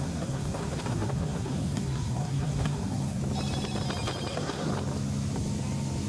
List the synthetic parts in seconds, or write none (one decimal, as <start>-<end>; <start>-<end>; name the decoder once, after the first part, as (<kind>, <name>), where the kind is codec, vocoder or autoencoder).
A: 0.0-3.2 (codec, SNAC); 4.3-4.7